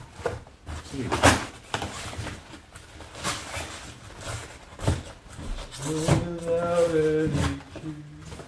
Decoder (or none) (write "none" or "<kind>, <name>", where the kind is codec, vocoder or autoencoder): none